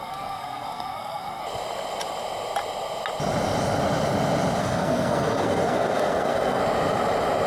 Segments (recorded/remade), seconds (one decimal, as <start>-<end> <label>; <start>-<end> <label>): 0.0-1.4 remade; 1.4-4.6 recorded; 4.6-6.6 remade; 6.6-7.5 recorded